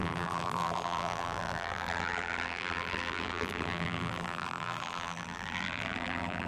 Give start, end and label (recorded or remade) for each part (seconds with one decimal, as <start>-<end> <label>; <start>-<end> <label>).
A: 0.0-6.5 remade